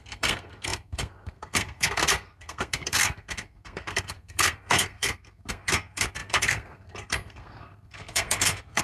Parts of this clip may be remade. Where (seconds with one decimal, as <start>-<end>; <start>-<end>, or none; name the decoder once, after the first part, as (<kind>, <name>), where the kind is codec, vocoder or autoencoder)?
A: 0.0-8.8 (codec, SNAC)